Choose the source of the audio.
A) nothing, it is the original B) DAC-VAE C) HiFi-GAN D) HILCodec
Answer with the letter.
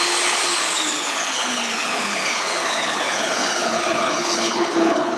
D